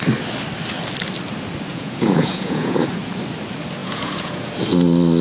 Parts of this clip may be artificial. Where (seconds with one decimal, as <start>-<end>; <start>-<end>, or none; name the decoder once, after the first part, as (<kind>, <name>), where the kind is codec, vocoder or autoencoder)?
1.7-2.9 (vocoder, Vocos); 3.8-4.5